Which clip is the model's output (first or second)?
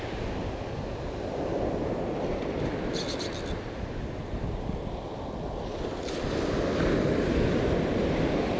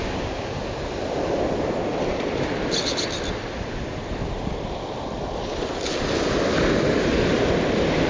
second